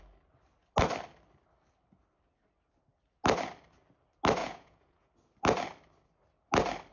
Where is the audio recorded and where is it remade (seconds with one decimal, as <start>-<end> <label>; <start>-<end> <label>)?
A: 0.0-4.4 recorded; 4.4-5.1 remade; 5.1-6.9 recorded